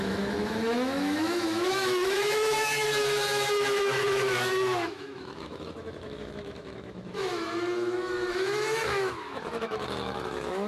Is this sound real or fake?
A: fake